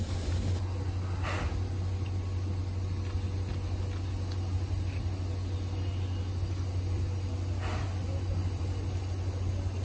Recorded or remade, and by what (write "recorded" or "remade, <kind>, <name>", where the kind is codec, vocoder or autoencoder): recorded